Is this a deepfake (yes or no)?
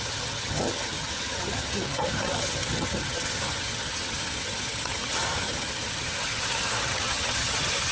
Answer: yes